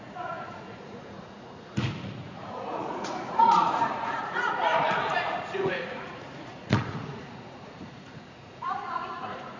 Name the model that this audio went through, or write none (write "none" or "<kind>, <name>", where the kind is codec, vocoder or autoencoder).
vocoder, Vocos